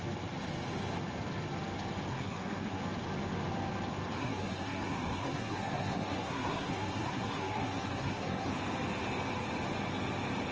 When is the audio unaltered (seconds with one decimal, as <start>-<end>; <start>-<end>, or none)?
0.0-2.1; 2.8-4.2; 8.5-10.5